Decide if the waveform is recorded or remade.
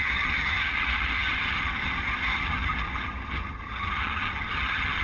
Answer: remade